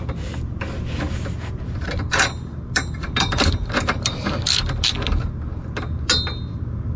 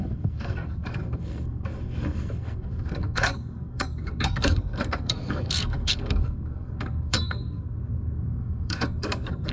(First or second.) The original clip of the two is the first